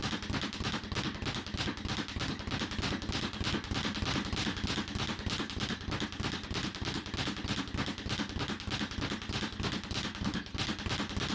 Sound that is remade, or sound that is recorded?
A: recorded